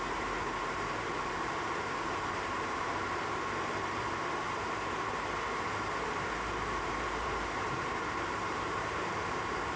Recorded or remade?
remade